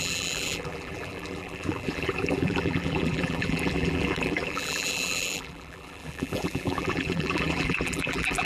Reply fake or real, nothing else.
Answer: fake